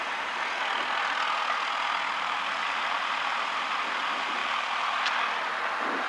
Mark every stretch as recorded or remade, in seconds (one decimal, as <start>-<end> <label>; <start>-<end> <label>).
0.0-4.4 recorded; 4.4-5.0 remade; 5.0-6.1 recorded